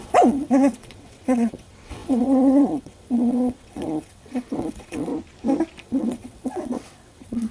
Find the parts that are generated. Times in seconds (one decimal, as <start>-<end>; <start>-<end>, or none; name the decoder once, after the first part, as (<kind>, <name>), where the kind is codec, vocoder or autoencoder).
0.0-5.1 (vocoder, WaveNeXt); 5.8-7.5